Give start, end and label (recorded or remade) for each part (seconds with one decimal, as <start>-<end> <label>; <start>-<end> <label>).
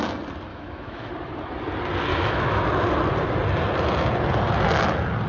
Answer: 0.0-0.5 recorded; 0.5-1.1 remade; 1.1-2.1 recorded; 2.1-2.6 remade; 2.6-5.3 recorded